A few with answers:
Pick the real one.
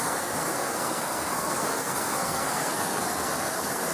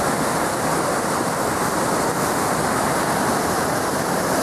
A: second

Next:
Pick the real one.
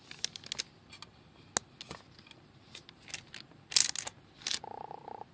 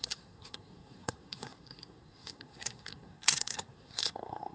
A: first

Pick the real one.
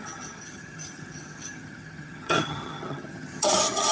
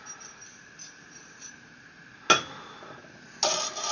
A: second